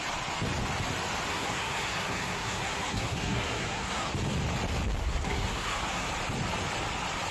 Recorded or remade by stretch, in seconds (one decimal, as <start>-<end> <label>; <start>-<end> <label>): 0.0-1.3 recorded; 1.3-4.1 remade; 4.1-5.0 recorded; 5.0-6.1 remade; 6.1-7.3 recorded